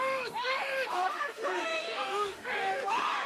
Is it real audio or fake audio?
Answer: fake